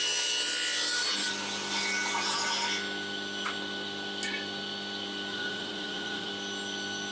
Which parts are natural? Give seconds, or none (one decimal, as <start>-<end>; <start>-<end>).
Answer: 0.0-5.3; 6.3-7.1